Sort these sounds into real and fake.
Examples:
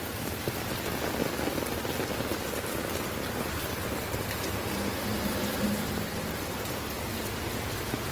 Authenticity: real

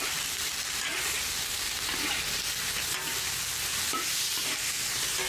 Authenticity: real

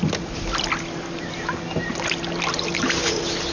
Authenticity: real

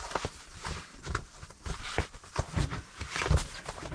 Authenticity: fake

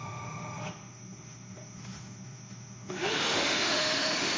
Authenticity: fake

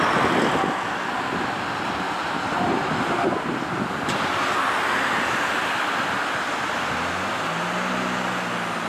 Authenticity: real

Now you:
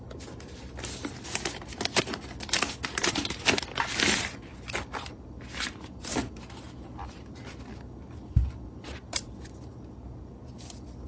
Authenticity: real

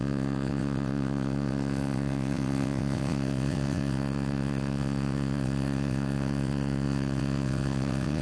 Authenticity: fake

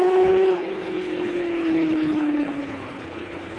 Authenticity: fake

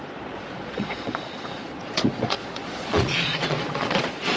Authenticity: fake